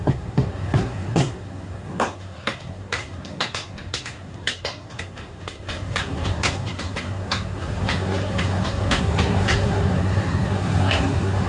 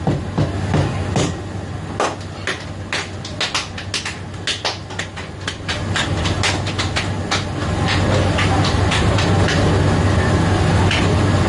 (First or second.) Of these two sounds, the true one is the second